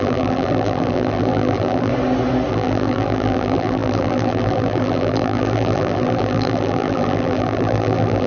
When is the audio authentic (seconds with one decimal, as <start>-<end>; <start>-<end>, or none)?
1.9-2.5